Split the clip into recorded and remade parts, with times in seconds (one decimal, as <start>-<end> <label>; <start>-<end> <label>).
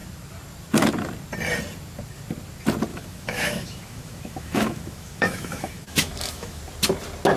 0.0-2.9 recorded; 2.9-6.6 remade; 6.6-7.4 recorded